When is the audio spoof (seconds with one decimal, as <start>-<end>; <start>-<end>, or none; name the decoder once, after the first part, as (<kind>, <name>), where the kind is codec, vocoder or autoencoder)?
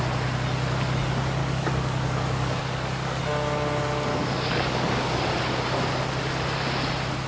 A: 1.4-3.2 (codec, DAC); 4.1-5.2